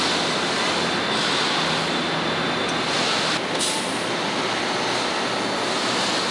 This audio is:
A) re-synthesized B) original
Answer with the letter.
B